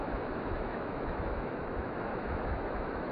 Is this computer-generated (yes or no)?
yes